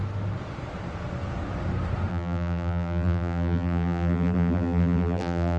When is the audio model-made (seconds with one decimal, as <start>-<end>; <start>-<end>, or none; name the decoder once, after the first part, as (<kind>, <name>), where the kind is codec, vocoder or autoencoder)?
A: 2.1-5.6 (vocoder, BigVGAN v2)